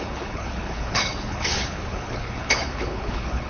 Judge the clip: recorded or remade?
remade